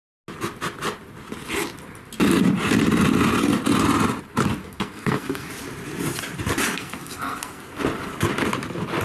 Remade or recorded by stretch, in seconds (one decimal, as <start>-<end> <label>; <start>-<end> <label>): 0.0-4.6 recorded; 4.6-5.5 remade; 5.5-6.7 recorded; 6.7-7.8 remade; 7.8-9.0 recorded